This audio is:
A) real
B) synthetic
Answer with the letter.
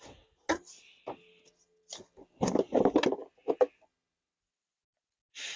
A